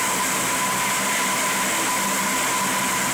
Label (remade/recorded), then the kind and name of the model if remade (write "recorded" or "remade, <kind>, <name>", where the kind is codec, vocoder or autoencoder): recorded